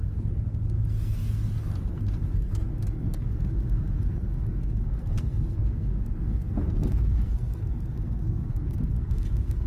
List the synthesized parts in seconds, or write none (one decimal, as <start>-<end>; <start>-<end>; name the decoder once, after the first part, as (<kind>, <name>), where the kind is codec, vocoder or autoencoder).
0.0-9.7 (codec, SNAC)